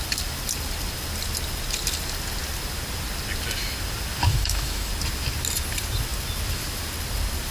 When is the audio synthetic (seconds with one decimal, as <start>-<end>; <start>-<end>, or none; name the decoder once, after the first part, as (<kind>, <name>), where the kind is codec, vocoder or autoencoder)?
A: 4.3-4.9 (autoencoder, DAC-VAE)